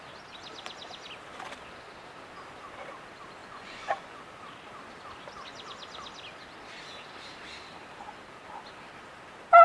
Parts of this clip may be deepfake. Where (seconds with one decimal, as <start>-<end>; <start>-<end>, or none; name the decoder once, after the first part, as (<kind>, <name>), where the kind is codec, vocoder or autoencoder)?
3.4-4.2 (vocoder, Vocos)